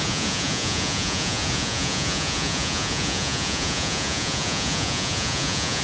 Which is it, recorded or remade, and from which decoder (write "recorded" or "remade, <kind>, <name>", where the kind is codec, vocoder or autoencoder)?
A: remade, vocoder, Vocos